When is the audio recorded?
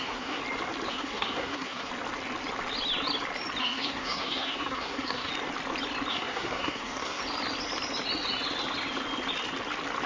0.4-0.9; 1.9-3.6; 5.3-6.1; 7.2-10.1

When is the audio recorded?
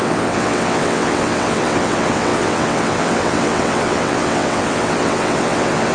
none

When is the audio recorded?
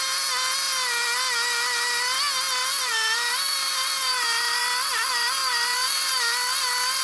0.0-2.7; 4.6-5.4; 6.1-7.0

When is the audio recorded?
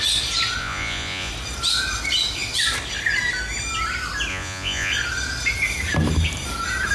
0.0-0.6; 1.3-4.3; 4.9-6.9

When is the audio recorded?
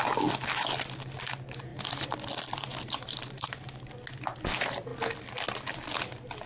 0.0-1.7; 3.9-6.5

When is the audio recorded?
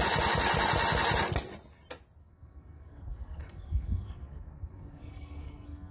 0.0-2.2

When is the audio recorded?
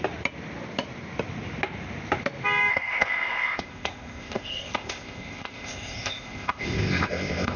0.0-2.7